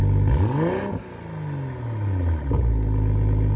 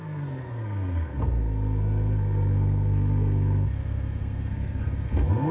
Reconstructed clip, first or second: second